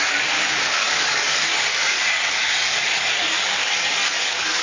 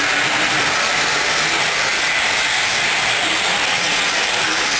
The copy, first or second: first